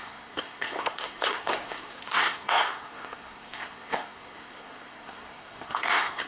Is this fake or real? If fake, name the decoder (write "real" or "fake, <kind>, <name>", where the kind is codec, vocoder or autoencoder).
fake, codec, SNAC